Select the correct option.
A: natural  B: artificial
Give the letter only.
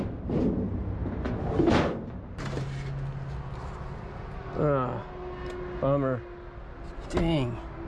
A